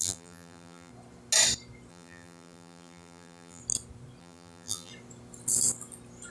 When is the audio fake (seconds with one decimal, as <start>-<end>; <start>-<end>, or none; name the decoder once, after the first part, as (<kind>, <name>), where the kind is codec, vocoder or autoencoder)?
0.0-0.9 (vocoder, BigVGAN v2); 1.9-3.6; 4.2-4.9